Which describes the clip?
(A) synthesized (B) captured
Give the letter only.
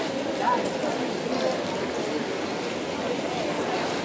B